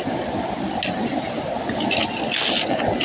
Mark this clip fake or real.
real